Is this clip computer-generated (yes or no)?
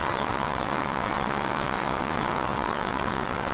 yes